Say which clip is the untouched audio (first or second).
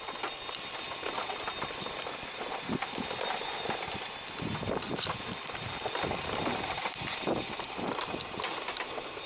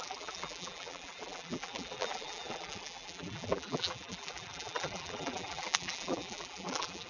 first